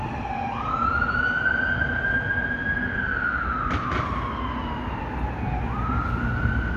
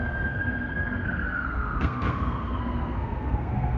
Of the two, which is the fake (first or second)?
second